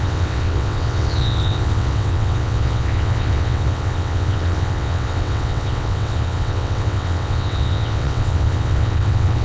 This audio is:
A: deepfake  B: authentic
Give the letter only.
A